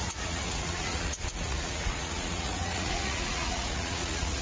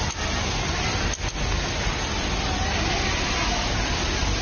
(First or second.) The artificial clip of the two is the first